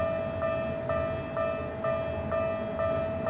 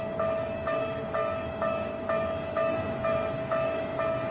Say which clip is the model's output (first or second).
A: second